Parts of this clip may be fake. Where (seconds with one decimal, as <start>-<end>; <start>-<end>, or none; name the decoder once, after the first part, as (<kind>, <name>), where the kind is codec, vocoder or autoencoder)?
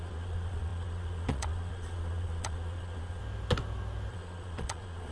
0.0-3.2 (vocoder, Vocos); 4.1-5.1